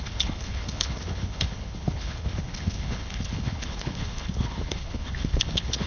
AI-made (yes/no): yes